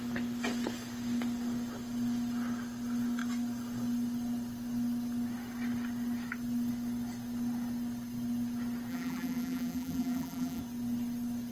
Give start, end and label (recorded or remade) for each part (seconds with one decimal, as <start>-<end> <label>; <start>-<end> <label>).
0.0-8.9 recorded; 8.9-10.6 remade; 10.6-11.5 recorded